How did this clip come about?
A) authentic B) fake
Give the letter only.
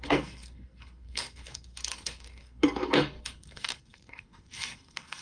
B